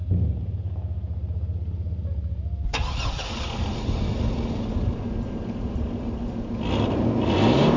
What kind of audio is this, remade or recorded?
recorded